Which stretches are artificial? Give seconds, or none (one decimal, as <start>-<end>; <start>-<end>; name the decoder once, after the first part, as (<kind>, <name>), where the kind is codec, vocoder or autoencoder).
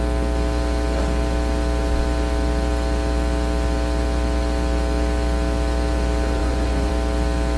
6.4-6.9 (vocoder, Vocos)